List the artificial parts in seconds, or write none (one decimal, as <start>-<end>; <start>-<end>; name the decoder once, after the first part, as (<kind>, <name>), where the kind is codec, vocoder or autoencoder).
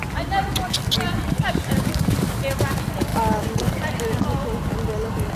none